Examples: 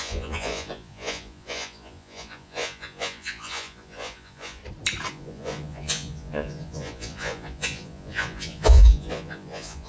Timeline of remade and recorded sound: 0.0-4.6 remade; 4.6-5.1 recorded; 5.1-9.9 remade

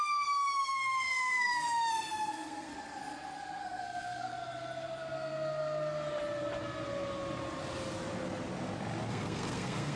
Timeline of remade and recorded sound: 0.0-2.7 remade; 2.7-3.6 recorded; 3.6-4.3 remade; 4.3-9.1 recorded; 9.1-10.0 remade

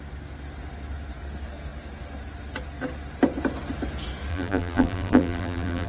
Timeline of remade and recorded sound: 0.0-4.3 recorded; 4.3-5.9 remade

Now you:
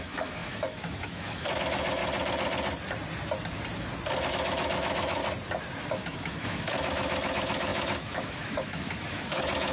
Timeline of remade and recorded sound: 0.0-2.0 remade; 2.0-4.3 recorded; 4.3-5.2 remade; 5.2-5.9 recorded; 5.9-9.7 remade